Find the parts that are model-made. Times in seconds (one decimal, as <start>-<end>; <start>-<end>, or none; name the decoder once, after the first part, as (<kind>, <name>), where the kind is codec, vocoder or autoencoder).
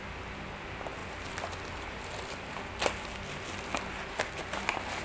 none